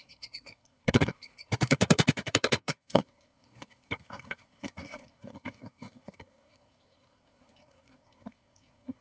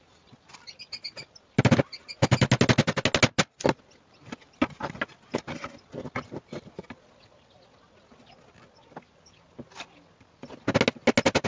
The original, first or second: second